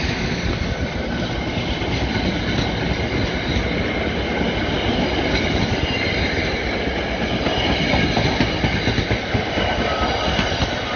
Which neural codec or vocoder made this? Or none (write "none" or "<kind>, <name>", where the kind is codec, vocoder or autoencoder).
none